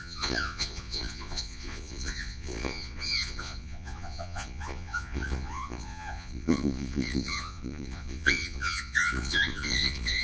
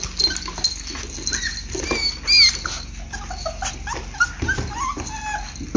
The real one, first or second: second